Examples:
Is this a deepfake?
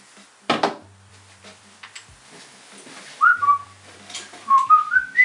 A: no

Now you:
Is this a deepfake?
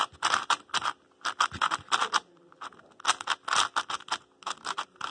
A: no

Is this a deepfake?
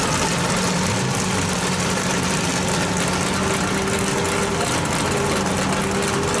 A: no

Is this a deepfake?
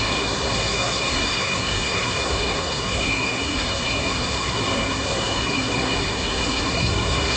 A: yes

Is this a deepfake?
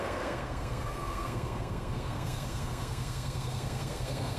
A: yes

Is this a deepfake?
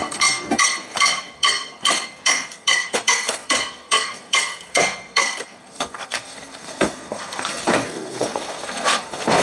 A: yes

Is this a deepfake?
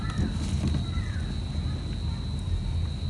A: no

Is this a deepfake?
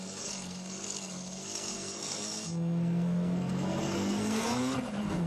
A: yes